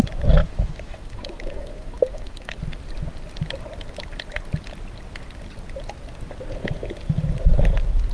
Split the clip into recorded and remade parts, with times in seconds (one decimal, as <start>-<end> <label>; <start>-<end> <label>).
0.0-0.4 recorded; 0.4-2.6 remade; 2.6-8.1 recorded

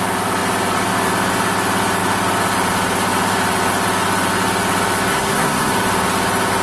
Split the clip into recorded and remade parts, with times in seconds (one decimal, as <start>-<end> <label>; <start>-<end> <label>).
0.0-5.1 recorded; 5.1-5.7 remade; 5.7-6.6 recorded